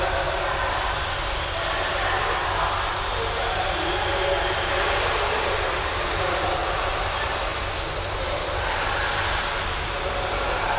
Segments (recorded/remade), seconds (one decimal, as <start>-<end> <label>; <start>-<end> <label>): 0.0-6.6 recorded; 6.6-7.6 remade; 7.6-10.8 recorded